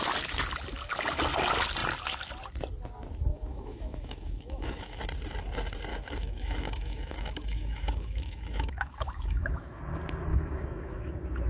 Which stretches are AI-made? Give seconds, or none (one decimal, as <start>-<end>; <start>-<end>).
3.3-5.0; 5.9-9.8; 10.3-11.1